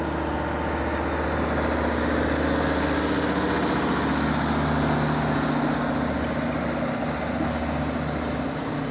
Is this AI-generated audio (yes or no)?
no